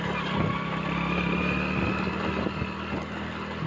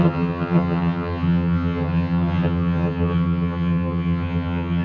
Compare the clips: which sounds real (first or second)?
first